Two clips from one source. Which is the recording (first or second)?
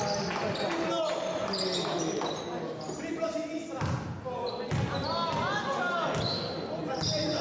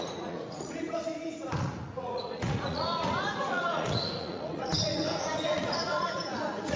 first